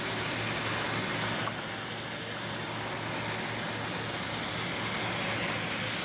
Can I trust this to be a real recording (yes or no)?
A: yes